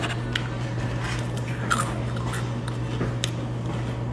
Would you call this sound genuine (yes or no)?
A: yes